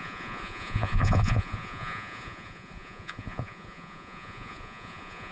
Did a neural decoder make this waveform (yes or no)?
yes